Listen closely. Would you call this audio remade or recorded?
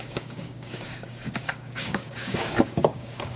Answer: remade